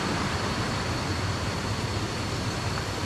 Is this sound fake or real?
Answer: real